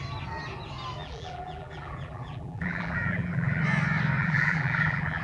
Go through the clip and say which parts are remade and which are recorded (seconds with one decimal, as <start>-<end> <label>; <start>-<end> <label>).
0.0-1.0 recorded; 1.0-3.6 remade; 3.6-4.2 recorded; 4.2-5.2 remade